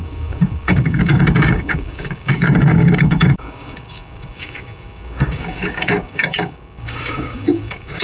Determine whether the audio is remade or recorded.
remade